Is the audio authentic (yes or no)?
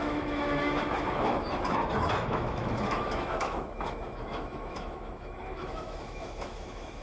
no